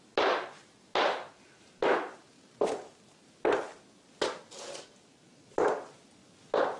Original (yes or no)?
yes